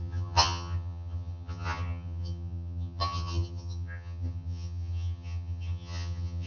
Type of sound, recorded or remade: remade